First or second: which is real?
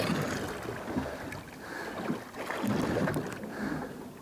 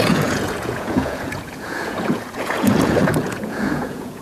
first